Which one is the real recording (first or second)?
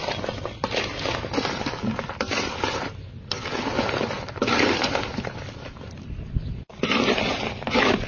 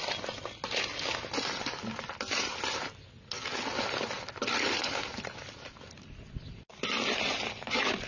second